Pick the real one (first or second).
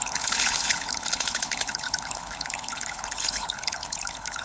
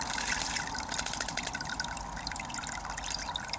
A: second